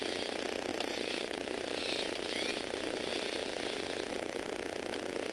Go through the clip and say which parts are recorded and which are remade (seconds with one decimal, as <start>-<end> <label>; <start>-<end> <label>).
0.0-0.7 recorded; 0.7-1.8 remade; 1.8-2.5 recorded; 2.5-3.1 remade; 3.1-5.3 recorded